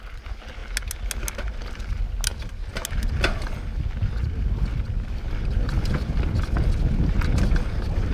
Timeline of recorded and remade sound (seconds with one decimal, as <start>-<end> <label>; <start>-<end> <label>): 0.0-8.1 recorded

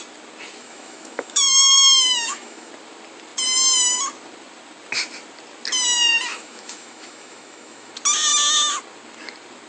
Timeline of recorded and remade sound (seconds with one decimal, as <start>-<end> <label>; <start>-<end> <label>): 0.0-0.6 recorded; 0.6-2.7 remade; 2.7-6.3 recorded; 6.3-7.9 remade; 7.9-9.7 recorded

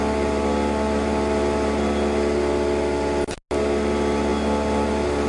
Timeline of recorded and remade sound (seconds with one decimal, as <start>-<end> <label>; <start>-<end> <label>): 0.0-5.3 recorded

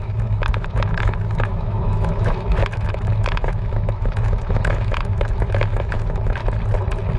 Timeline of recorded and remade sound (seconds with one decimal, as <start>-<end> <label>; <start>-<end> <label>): 0.0-6.4 remade; 6.4-7.2 recorded

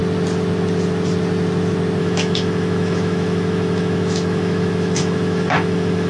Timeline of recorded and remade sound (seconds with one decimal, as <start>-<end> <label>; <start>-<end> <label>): 0.0-2.0 recorded; 2.0-6.1 remade

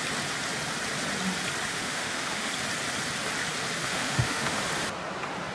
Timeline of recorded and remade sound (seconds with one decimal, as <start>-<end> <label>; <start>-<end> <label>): 0.0-1.7 recorded; 1.7-2.5 remade; 2.5-3.8 recorded; 3.8-4.6 remade; 4.6-5.5 recorded